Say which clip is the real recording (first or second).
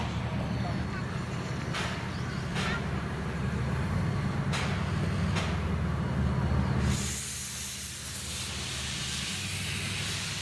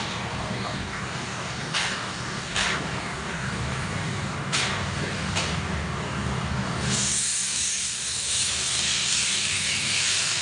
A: first